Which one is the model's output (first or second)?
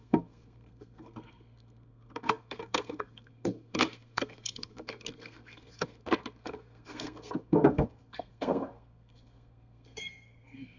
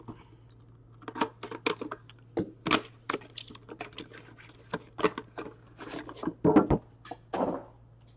first